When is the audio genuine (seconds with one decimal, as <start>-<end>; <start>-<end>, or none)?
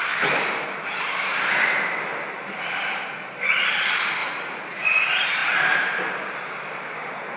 0.0-4.2; 4.9-7.4